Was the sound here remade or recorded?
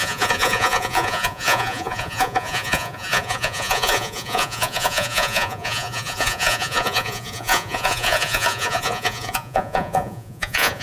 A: remade